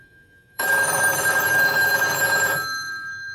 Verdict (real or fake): fake